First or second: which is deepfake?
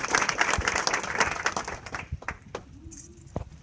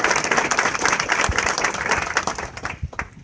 second